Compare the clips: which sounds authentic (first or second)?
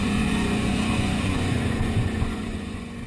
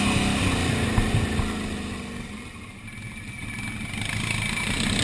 second